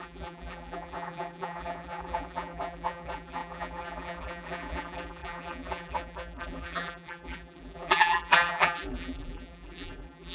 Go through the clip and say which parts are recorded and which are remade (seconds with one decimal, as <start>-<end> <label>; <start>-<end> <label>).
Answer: 0.0-10.3 remade